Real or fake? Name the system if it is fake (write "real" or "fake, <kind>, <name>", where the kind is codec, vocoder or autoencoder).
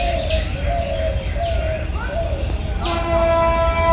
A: real